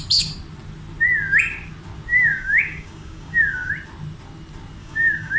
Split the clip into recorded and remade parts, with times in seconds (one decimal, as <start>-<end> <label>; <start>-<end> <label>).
0.0-2.1 recorded; 2.1-3.7 remade; 3.7-4.8 recorded; 4.8-5.4 remade

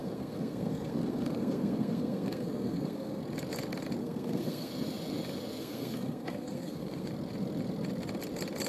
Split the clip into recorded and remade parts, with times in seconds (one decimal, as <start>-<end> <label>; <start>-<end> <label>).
0.0-3.2 remade; 3.2-4.0 recorded; 4.0-4.7 remade; 4.7-5.6 recorded; 5.6-7.1 remade; 7.1-8.7 recorded

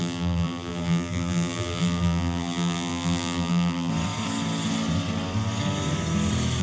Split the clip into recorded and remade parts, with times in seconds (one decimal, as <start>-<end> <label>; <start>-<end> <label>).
0.0-3.9 remade; 3.9-6.6 recorded